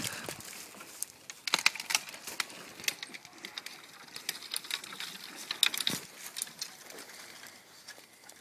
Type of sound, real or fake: real